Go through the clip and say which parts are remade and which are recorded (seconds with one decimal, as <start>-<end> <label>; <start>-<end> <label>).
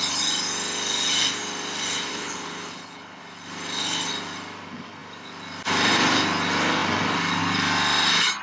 0.0-2.1 recorded; 2.1-3.2 remade; 3.2-8.4 recorded